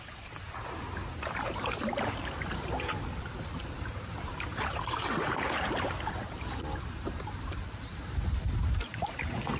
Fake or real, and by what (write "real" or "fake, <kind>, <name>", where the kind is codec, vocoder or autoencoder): fake, vocoder, BigVGAN v2